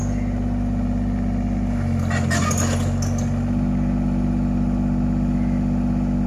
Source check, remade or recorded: recorded